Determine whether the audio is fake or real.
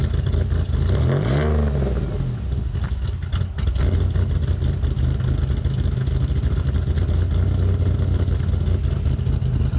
real